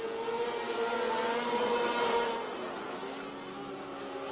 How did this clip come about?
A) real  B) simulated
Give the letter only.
A